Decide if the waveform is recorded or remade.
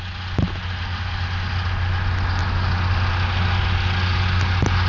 recorded